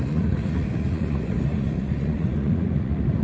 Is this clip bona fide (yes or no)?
no